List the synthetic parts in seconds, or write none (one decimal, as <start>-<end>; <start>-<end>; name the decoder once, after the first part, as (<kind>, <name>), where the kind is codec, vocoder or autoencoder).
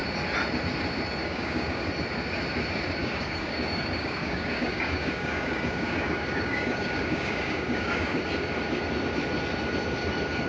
1.2-1.9 (codec, DAC); 3.0-8.2